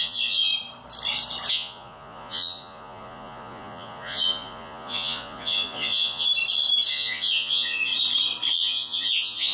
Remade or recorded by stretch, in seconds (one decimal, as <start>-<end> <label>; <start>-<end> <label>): 0.0-0.5 remade; 0.5-1.5 recorded; 1.5-6.3 remade; 6.3-6.9 recorded; 6.9-7.9 remade; 7.9-8.5 recorded; 8.5-9.5 remade